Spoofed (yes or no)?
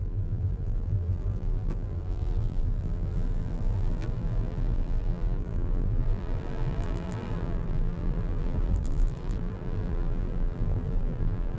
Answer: yes